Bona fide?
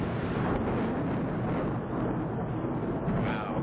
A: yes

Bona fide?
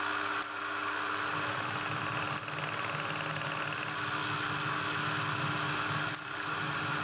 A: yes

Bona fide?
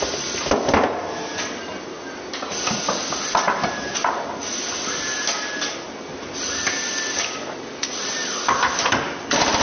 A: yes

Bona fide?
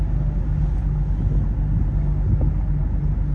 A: yes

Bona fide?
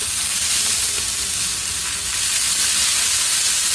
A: yes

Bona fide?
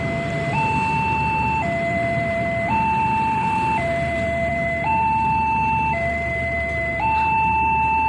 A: no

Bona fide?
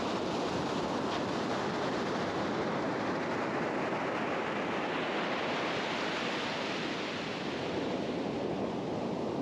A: yes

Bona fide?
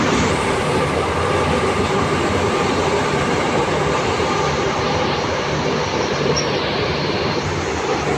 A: no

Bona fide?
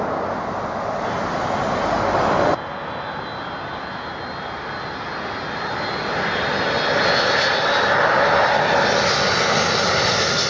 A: yes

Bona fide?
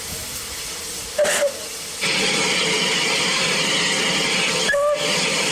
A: yes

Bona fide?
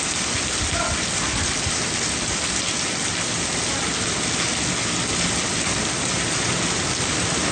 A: yes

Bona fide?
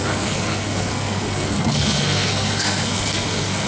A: no